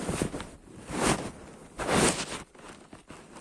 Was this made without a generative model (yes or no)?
yes